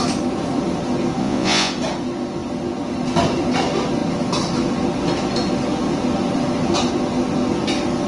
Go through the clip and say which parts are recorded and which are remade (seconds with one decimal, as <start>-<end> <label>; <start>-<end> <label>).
0.0-1.2 recorded; 1.2-1.7 remade; 1.7-8.1 recorded